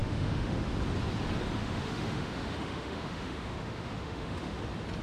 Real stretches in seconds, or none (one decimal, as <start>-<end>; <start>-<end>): 0.7-1.6; 4.6-5.0